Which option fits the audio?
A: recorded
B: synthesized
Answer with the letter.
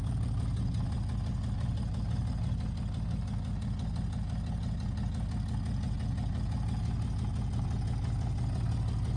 A